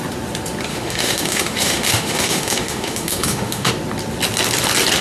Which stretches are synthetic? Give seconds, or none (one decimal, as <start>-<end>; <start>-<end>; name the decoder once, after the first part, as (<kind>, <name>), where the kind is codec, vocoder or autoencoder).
0.7-3.7 (autoencoder, DAC-VAE)